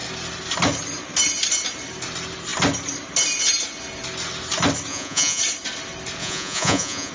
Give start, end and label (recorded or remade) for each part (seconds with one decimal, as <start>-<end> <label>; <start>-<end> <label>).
0.0-4.9 recorded; 4.9-5.4 remade; 5.4-6.2 recorded; 6.2-7.1 remade